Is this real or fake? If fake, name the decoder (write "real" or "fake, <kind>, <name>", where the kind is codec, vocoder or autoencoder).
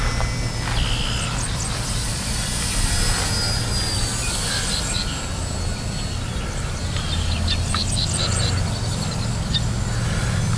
real